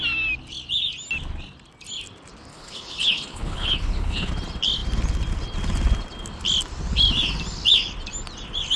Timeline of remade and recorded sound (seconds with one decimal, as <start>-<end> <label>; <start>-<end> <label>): 0.0-2.5 recorded; 2.5-4.3 remade; 4.3-8.8 recorded